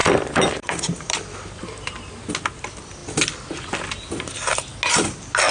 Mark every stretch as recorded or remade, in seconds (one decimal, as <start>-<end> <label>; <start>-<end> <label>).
0.0-2.1 remade; 2.1-5.5 recorded